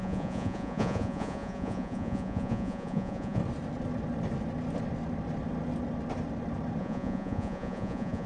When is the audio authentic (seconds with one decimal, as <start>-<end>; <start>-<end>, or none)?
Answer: 3.4-6.8